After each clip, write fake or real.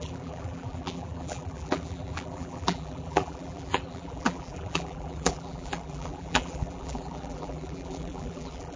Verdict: fake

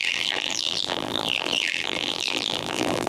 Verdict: fake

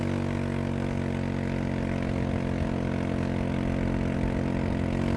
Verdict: real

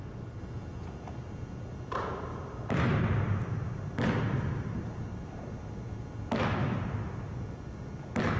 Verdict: real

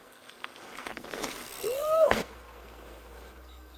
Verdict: fake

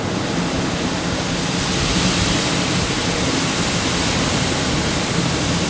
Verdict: real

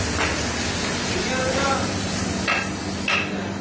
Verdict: real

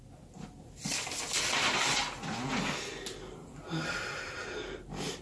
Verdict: real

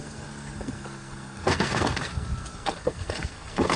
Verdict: fake